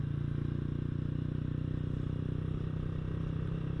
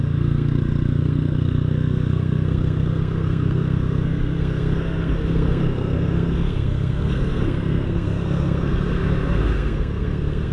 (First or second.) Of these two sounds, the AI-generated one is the second